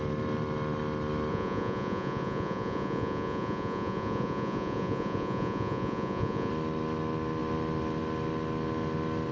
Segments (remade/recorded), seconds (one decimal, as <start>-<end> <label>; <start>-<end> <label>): 0.0-1.3 recorded; 1.3-6.5 remade; 6.5-9.3 recorded